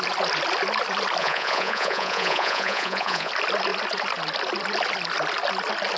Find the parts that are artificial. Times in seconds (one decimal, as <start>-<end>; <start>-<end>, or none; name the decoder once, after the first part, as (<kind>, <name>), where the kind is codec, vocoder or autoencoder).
1.2-3.3 (vocoder, Vocos)